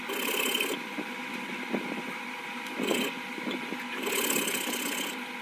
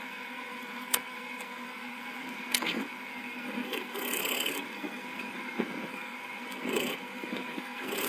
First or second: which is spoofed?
second